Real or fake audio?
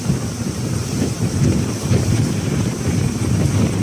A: fake